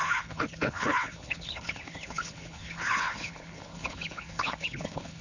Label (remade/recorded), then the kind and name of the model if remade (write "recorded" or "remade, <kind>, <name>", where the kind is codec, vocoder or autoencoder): remade, codec, HILCodec